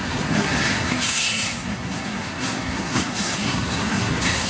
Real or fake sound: fake